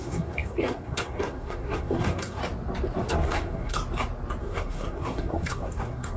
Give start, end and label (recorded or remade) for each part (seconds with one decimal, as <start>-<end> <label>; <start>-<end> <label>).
0.0-2.4 remade; 2.4-3.1 recorded; 3.1-3.8 remade; 3.8-4.4 recorded; 4.4-6.2 remade